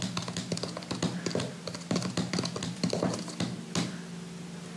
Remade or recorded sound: recorded